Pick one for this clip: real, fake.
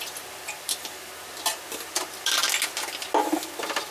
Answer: real